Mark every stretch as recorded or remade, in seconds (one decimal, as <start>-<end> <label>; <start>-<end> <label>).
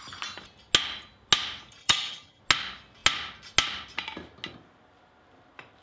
0.0-1.8 recorded; 1.8-2.4 remade; 2.4-5.8 recorded